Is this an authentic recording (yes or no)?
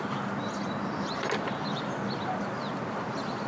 yes